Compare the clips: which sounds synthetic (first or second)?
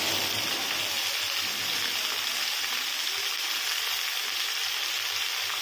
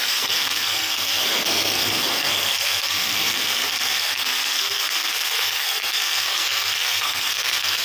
second